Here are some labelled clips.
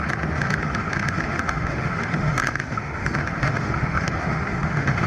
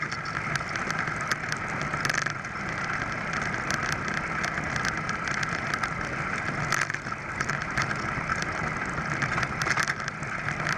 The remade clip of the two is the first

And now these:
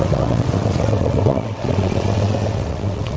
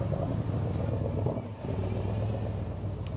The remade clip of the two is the first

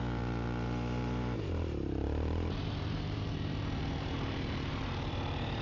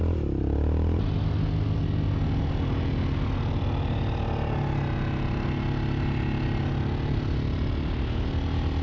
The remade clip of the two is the first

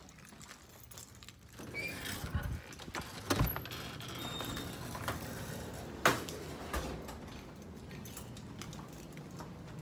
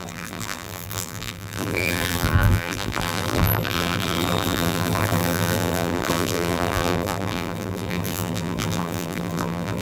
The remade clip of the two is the second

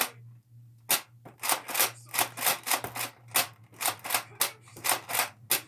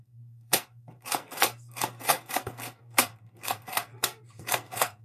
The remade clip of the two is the second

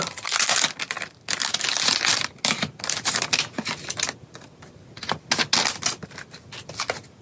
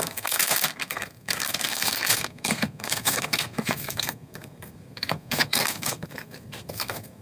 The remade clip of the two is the second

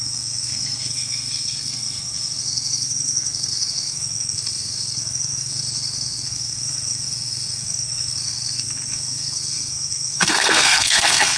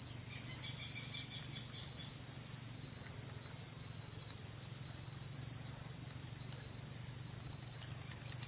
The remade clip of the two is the first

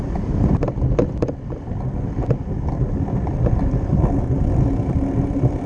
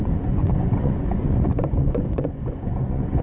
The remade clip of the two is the second